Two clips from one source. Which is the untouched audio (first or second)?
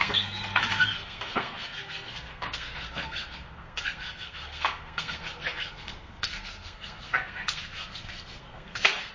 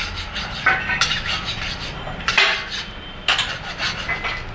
second